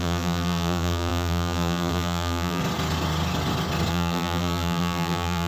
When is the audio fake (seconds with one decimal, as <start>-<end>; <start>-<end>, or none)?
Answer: 0.0-2.6; 3.9-5.5